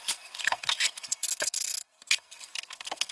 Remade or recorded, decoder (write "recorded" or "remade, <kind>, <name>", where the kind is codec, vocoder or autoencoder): remade, codec, SNAC